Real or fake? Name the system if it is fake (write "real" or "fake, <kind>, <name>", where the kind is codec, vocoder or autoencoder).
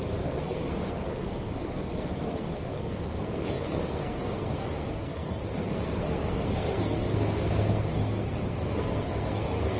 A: fake, codec, SNAC